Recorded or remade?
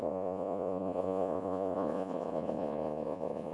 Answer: remade